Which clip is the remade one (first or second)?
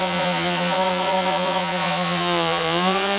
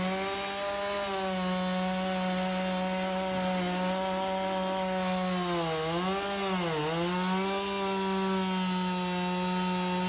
first